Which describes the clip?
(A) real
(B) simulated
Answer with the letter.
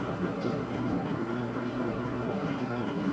B